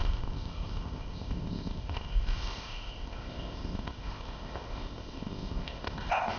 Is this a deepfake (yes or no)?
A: yes